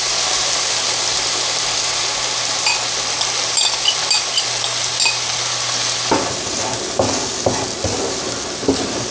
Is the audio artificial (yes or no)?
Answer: no